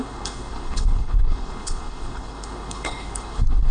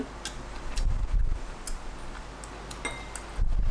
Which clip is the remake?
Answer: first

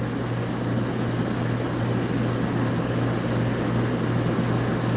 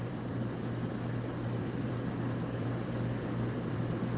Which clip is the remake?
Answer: second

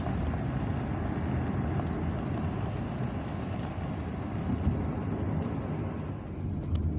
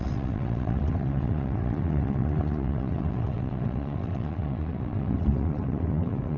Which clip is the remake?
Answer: second